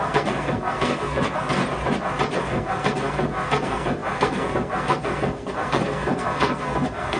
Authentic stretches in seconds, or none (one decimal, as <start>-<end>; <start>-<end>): 1.6-2.4